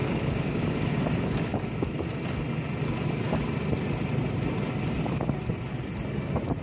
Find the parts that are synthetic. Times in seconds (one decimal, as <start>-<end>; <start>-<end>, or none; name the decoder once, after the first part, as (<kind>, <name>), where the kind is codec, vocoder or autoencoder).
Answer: 0.0-1.0 (codec, DAC)